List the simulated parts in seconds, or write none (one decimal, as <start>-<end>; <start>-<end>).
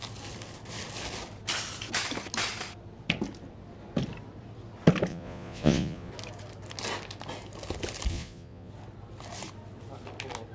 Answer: 5.1-6.1; 8.1-8.7